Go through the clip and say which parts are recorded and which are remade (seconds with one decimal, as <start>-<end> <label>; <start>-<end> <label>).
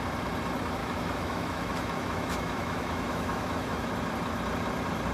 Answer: 0.0-0.8 recorded; 0.8-3.9 remade; 3.9-5.1 recorded